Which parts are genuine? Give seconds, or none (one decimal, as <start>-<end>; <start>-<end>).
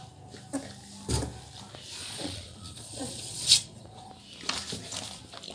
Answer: 0.0-2.0; 4.1-5.5